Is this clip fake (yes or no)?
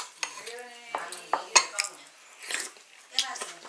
no